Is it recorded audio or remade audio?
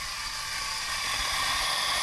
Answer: recorded